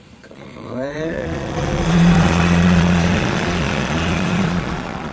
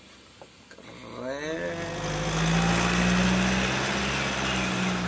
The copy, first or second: first